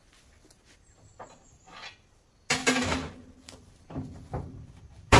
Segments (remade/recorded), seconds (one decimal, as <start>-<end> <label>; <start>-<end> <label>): 0.0-2.6 recorded; 2.6-5.2 remade